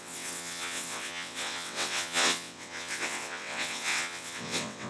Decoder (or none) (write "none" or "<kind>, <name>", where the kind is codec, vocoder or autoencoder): vocoder, WaveNeXt